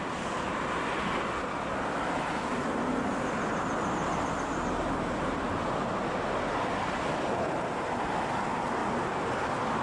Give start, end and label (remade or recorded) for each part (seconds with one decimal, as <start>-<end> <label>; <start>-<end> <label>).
0.0-9.8 recorded

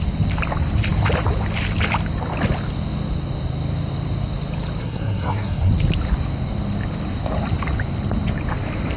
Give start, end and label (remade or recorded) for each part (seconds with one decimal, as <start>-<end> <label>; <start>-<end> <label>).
0.0-4.8 recorded; 4.8-5.7 remade; 5.7-9.0 recorded

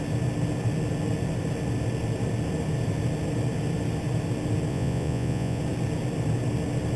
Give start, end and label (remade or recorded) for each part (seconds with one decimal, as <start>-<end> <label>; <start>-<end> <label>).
0.0-4.7 recorded; 4.7-5.6 remade; 5.6-7.0 recorded

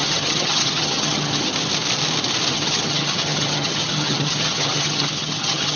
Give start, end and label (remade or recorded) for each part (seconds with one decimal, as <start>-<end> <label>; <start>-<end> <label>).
0.0-1.5 remade; 1.5-2.5 recorded; 2.5-5.8 remade